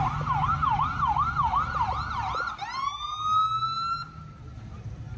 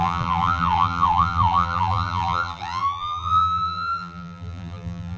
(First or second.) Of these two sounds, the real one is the first